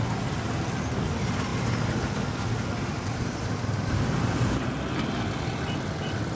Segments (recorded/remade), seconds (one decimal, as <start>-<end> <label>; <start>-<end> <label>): 0.0-6.4 recorded